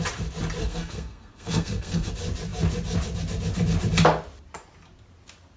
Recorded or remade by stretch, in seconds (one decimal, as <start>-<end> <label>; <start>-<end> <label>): 0.0-0.6 recorded; 0.6-2.1 remade; 2.1-5.6 recorded